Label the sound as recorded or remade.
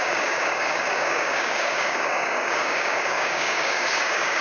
remade